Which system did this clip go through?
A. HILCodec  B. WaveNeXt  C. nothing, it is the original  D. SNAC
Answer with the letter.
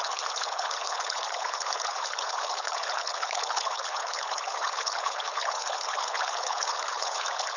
A